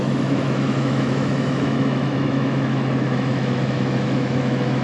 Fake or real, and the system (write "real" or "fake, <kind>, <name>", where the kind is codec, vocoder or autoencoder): fake, autoencoder, DAC-VAE